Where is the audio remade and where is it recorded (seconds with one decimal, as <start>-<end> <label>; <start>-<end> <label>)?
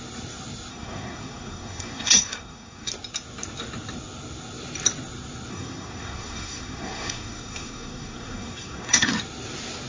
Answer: 0.0-0.7 recorded; 0.7-2.9 remade; 2.9-5.5 recorded; 5.5-9.1 remade; 9.1-9.9 recorded